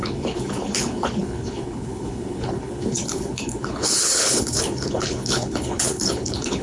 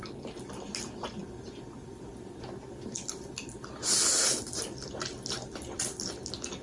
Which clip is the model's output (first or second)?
first